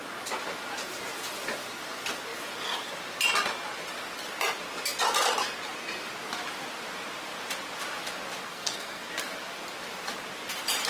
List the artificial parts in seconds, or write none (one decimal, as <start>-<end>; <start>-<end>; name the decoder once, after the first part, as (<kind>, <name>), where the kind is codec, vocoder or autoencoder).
8.4-9.1 (codec, SNAC)